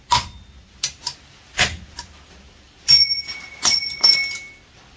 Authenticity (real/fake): real